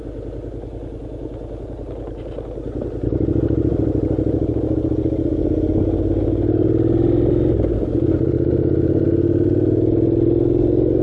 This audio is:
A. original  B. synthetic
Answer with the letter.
A